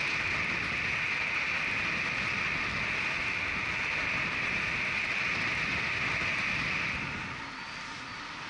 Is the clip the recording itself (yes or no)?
yes